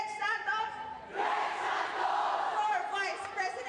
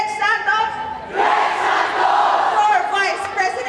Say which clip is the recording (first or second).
second